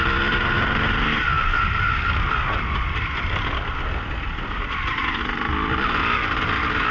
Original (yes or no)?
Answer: yes